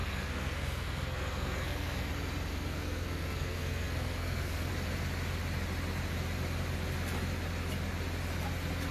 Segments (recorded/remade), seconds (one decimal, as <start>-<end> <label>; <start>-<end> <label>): 0.0-2.1 remade; 2.1-2.5 recorded; 2.5-4.7 remade; 4.7-8.9 recorded